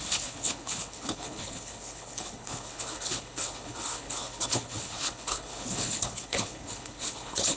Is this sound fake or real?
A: fake